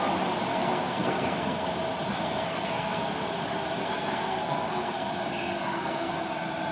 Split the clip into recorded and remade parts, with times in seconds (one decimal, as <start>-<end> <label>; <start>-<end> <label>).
0.0-0.5 recorded; 0.5-1.7 remade; 1.7-2.1 recorded; 2.1-3.0 remade; 3.0-3.8 recorded; 3.8-5.1 remade; 5.1-5.6 recorded; 5.6-6.1 remade; 6.1-6.7 recorded